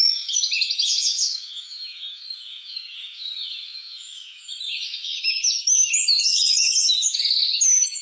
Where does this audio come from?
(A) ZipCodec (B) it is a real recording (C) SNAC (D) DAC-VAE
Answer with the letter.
D